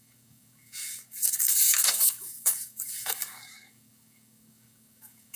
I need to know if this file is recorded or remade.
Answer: remade